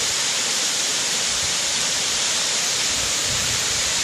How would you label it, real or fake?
fake